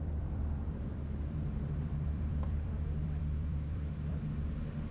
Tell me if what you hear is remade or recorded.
remade